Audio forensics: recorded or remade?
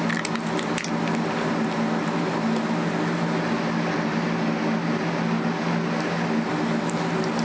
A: recorded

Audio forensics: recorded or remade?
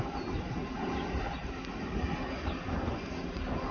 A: recorded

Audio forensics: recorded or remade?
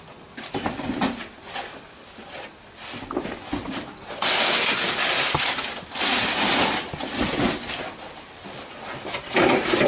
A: recorded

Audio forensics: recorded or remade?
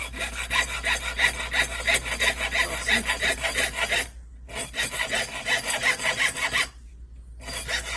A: recorded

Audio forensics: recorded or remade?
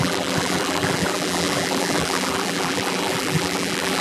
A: remade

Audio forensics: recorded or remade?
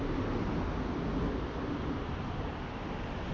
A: recorded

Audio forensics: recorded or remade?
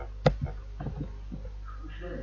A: recorded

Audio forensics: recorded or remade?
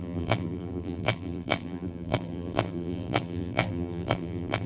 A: remade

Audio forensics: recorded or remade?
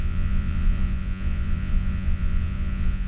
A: remade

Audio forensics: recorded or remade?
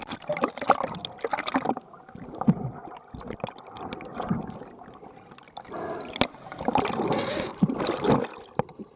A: recorded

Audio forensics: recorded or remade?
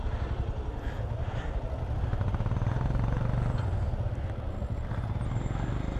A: recorded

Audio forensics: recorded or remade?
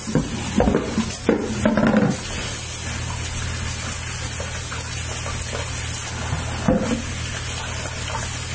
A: recorded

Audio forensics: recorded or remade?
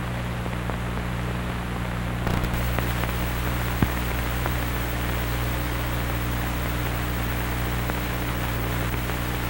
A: recorded